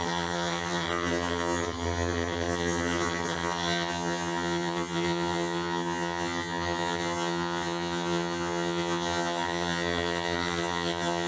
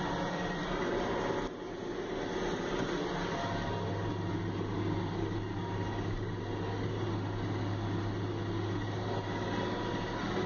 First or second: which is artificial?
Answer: first